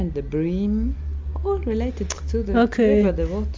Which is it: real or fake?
real